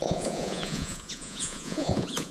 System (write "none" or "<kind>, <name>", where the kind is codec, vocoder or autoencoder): vocoder, Vocos